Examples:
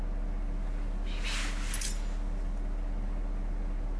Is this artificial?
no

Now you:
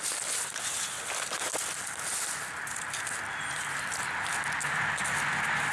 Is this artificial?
no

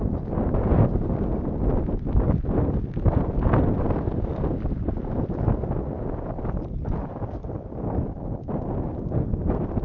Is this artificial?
no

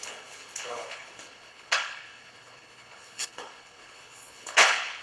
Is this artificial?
yes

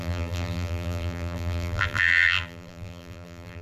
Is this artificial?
yes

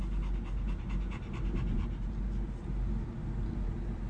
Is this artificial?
no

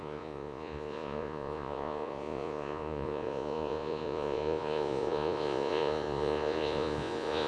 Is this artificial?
yes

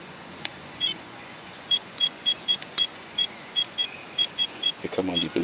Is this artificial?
yes